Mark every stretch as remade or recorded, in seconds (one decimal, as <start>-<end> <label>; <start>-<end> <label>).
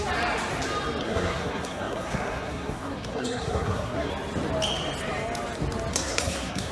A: 0.0-1.0 recorded; 1.0-4.1 remade; 4.1-5.9 recorded; 5.9-6.7 remade